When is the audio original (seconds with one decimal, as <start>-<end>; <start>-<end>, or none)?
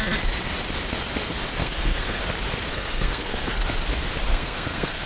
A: 0.0-1.6; 2.2-2.7; 3.5-4.3